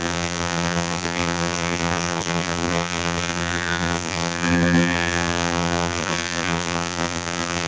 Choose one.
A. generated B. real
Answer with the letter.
A